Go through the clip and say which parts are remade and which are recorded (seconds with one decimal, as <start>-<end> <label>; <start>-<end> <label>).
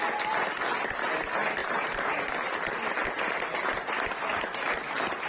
0.0-1.6 recorded; 1.6-2.2 remade; 2.2-5.3 recorded